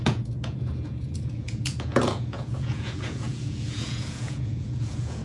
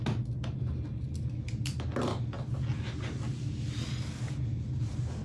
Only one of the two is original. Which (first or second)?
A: second